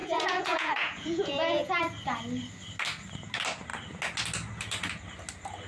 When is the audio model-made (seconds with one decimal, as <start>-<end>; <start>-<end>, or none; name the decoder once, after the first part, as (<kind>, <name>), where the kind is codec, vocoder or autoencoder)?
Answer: 0.0-1.8 (vocoder, Vocos)